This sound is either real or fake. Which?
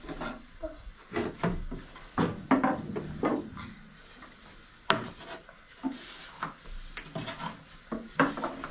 real